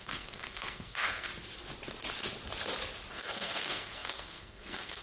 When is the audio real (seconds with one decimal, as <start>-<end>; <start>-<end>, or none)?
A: 1.3-3.1